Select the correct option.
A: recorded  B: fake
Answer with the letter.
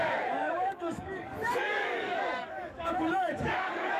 B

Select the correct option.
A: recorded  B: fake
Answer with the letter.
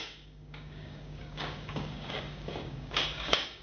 B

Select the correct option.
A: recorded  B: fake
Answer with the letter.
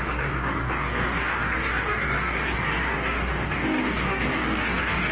B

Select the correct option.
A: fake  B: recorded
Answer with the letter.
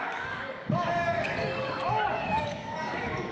A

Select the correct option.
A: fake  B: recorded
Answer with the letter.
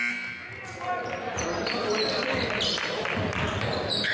B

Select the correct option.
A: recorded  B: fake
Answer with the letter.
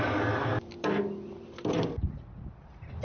A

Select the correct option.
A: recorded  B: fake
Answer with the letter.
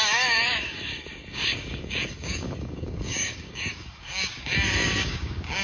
B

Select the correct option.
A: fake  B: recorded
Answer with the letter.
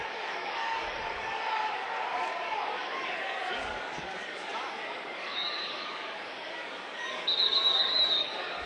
A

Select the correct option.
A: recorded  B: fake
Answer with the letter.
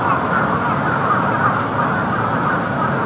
A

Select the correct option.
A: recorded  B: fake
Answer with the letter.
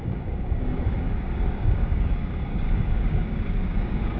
B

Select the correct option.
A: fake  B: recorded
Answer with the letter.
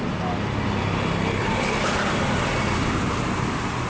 B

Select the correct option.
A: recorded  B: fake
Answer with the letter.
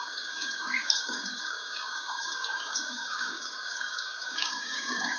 B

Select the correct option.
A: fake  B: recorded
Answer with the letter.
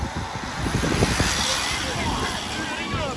B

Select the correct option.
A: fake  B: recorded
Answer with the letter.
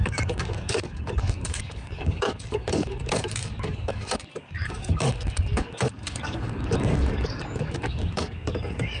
A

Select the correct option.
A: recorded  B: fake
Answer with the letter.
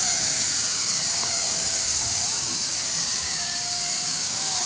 B